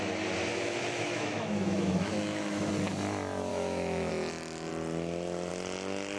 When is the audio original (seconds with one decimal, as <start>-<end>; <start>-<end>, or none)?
0.0-0.5; 2.7-3.5; 4.1-6.2